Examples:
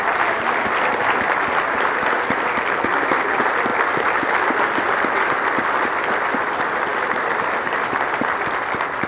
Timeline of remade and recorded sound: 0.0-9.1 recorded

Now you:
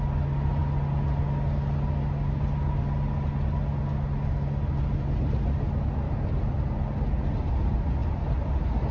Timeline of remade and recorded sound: 0.0-8.9 recorded

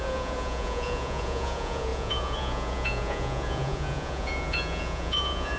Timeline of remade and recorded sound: 0.0-5.6 remade

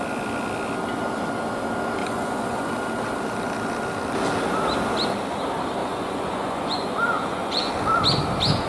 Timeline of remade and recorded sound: 0.0-2.0 recorded; 2.0-2.7 remade; 2.7-5.8 recorded; 5.8-7.7 remade; 7.7-8.7 recorded

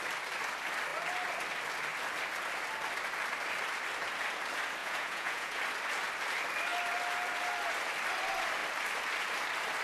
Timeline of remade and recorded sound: 0.0-4.8 recorded; 4.8-5.6 remade; 5.6-9.8 recorded

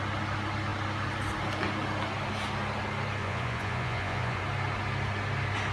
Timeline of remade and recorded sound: 0.0-3.2 recorded; 3.2-4.4 remade; 4.4-5.7 recorded

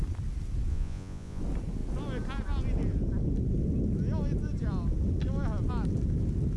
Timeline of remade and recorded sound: 0.0-0.7 recorded; 0.7-1.4 remade; 1.4-6.6 recorded